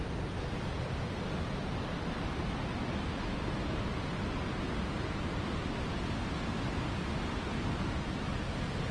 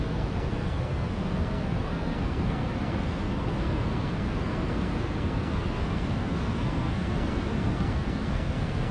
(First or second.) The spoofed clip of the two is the second